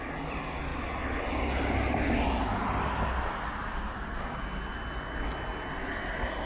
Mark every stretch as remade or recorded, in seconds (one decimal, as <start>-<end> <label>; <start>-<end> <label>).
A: 0.0-6.5 recorded